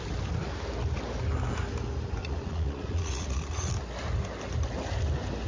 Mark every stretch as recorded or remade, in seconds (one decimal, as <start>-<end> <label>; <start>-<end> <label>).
0.0-2.2 recorded; 2.2-3.7 remade; 3.7-5.5 recorded